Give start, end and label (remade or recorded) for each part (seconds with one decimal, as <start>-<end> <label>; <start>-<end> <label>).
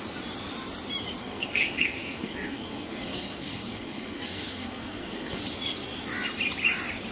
0.0-1.2 recorded; 1.2-5.4 remade; 5.4-7.1 recorded